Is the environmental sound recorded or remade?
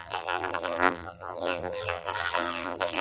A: remade